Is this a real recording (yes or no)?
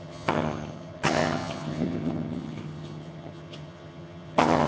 no